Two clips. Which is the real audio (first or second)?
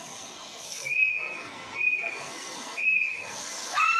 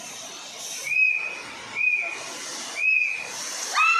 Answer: second